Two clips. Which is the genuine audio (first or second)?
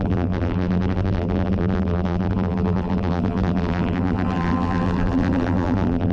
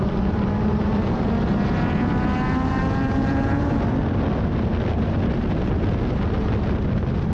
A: second